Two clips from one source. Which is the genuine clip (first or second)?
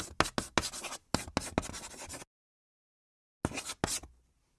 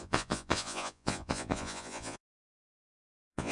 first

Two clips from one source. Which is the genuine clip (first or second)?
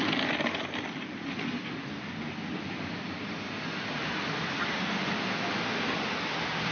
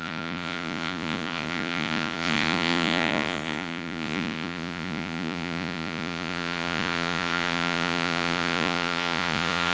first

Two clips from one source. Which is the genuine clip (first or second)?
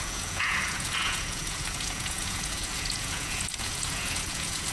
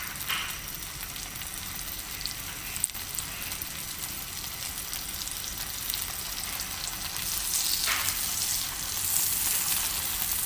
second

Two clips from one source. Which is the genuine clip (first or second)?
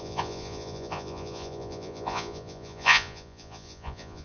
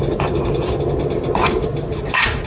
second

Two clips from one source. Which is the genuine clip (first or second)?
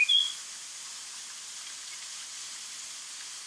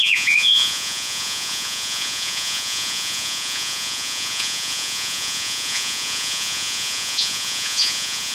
first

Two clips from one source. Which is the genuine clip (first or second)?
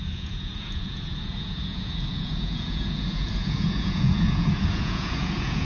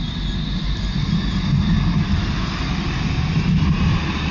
second